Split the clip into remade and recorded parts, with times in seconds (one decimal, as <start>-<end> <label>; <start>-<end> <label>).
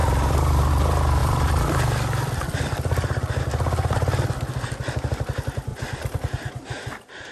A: 0.0-0.7 remade; 0.7-1.2 recorded; 1.2-3.4 remade; 3.4-5.7 recorded; 5.7-6.5 remade; 6.5-7.3 recorded